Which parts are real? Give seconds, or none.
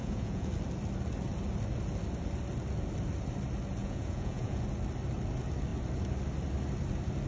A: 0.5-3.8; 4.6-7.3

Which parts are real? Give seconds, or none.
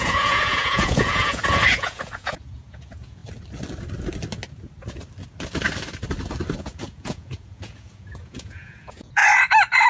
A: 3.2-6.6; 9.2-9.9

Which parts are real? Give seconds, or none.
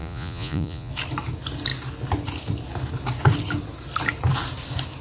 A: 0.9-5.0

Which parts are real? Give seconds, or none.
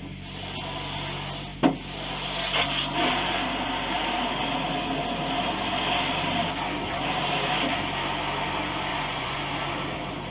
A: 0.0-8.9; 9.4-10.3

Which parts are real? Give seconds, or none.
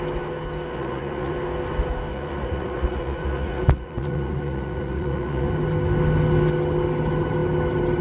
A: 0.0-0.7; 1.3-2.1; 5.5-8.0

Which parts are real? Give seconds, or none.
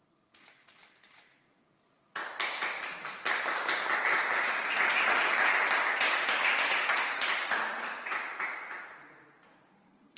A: 2.2-4.6; 5.5-6.1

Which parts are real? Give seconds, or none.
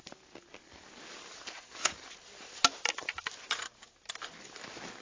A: 0.0-5.0